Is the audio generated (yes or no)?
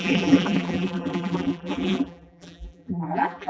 yes